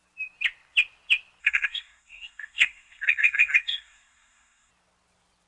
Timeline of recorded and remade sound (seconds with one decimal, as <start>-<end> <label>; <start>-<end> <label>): 0.0-1.4 recorded; 1.4-4.7 remade; 4.7-5.5 recorded